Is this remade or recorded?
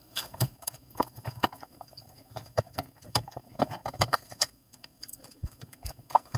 remade